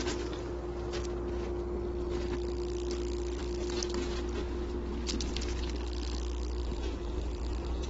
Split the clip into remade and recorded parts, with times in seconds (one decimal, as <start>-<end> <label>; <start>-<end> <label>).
0.0-6.6 recorded; 6.6-7.9 remade